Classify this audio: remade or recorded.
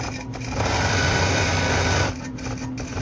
recorded